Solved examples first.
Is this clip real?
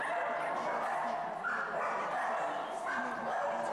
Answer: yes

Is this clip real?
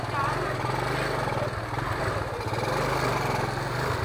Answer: yes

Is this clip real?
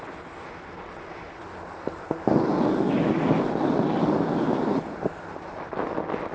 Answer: yes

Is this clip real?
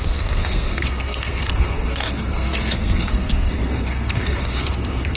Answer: no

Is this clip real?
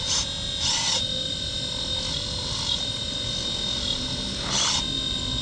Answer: yes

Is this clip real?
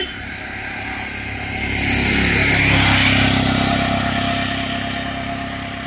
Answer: yes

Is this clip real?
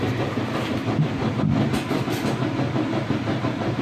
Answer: yes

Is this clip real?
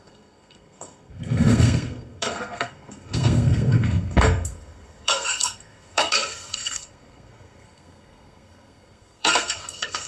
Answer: no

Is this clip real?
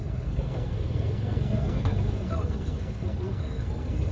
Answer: no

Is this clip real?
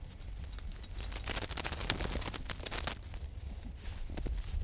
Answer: yes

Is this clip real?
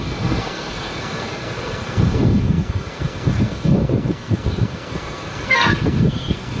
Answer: no